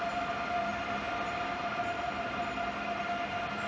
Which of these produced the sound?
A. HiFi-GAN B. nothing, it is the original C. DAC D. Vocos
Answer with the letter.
B